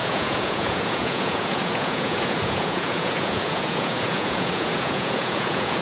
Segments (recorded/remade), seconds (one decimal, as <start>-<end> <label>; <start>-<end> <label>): 0.0-5.8 remade